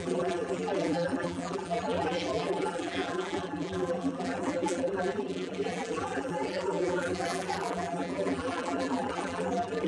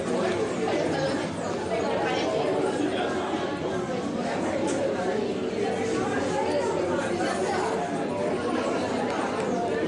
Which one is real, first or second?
second